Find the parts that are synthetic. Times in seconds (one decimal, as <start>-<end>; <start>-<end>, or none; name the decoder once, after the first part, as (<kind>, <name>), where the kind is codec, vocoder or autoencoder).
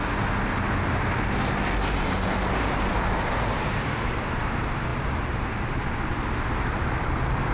none